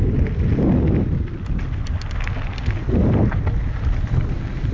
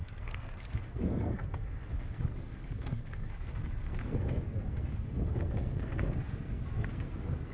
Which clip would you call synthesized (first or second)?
second